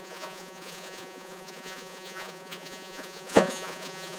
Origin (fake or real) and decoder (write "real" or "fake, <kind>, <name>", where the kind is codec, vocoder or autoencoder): fake, vocoder, Vocos